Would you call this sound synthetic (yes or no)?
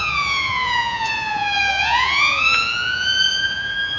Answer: yes